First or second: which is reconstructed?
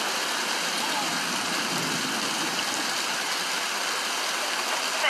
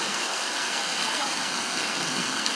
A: second